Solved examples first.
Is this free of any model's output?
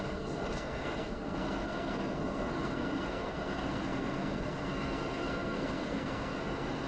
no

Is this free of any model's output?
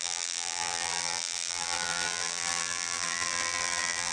no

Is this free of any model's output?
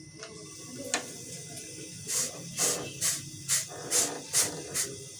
yes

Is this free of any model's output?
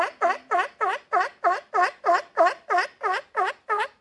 yes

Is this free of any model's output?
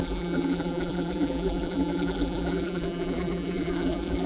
no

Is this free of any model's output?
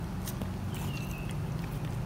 yes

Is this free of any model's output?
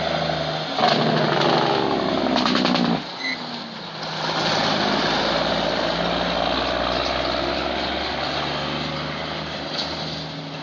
yes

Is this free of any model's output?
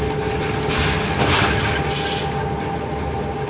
yes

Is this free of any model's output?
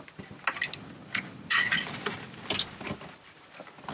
yes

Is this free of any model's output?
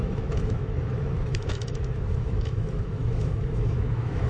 no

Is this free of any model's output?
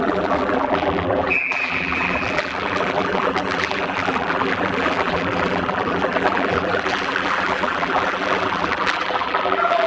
no